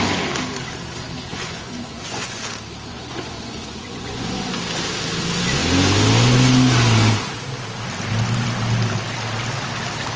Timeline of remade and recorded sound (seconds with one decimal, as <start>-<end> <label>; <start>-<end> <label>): 0.0-1.3 recorded; 1.3-2.4 remade; 2.4-2.9 recorded; 2.9-4.6 remade; 4.6-10.2 recorded